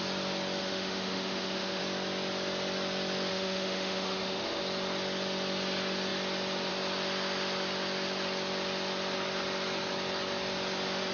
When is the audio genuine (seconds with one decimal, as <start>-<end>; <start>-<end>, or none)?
0.0-0.6; 1.8-3.3; 4.6-11.1

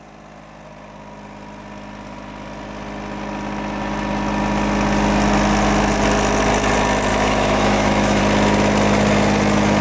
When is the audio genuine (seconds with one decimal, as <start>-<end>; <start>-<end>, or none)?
0.0-7.1; 8.2-9.8

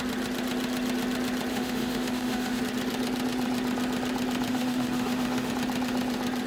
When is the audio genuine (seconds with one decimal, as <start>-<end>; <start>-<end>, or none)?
0.0-1.5; 2.6-4.5; 5.5-6.5

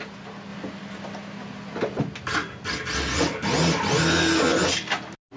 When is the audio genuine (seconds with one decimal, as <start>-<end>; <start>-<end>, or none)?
0.0-5.4

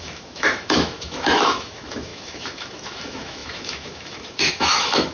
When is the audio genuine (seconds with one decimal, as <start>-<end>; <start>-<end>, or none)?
none